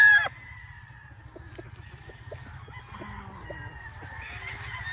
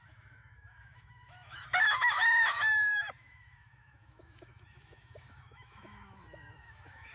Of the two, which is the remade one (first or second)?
second